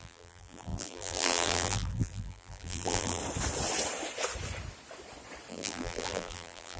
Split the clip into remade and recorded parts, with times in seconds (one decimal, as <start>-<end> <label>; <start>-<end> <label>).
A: 0.0-3.2 remade; 3.2-5.5 recorded; 5.5-6.8 remade